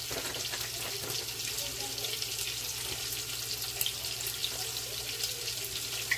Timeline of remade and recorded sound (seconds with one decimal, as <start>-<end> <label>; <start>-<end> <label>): 0.0-6.2 recorded